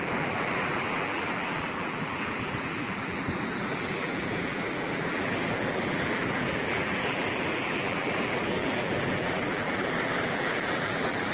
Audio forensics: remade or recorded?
remade